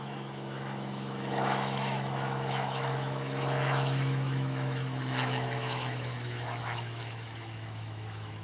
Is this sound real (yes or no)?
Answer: no